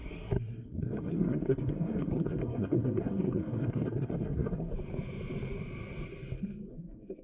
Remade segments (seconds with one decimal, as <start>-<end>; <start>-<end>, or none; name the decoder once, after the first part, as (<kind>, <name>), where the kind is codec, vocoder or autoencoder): 0.0-4.7 (codec, SNAC); 6.7-7.2

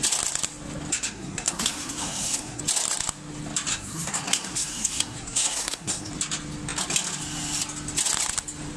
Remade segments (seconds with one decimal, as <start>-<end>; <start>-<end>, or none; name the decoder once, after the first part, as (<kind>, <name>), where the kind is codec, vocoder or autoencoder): 0.9-2.6 (codec, SNAC); 3.7-6.1